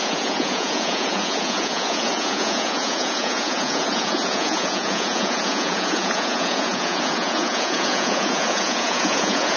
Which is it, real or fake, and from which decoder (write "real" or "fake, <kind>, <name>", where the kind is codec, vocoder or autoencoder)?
fake, vocoder, Vocos